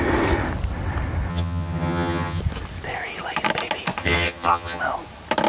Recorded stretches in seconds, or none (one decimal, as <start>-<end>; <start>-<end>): 0.0-1.3; 2.4-4.0; 4.8-5.5